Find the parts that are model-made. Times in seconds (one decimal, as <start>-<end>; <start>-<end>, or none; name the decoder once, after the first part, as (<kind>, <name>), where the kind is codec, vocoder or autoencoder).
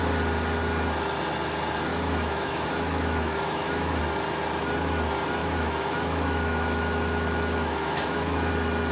1.9-4.0 (autoencoder, DAC-VAE); 5.4-8.5